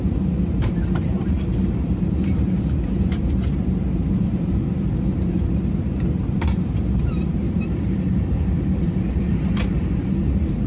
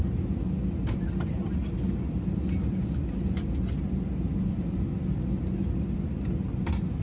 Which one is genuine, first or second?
second